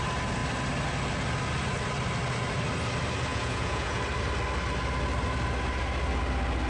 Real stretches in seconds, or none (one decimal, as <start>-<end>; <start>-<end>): 0.0-3.3; 4.0-6.7